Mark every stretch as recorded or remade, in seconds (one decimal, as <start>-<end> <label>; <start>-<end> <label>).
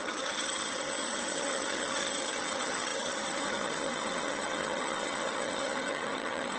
0.0-6.6 remade